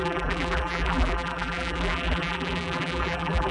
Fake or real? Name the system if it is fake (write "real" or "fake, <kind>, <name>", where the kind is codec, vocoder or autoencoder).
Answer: fake, vocoder, BigVGAN v2